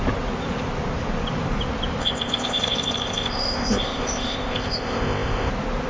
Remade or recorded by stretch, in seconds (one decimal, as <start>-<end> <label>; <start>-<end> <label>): 0.0-2.0 recorded; 2.0-5.5 remade; 5.5-5.9 recorded